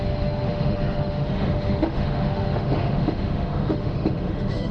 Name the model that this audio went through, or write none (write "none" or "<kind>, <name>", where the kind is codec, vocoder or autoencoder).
autoencoder, DAC-VAE